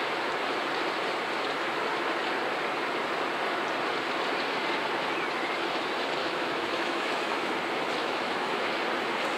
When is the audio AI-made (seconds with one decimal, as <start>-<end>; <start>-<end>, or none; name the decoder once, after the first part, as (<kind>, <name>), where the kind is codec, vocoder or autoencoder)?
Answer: 6.2-7.5 (autoencoder, DAC-VAE); 8.0-8.7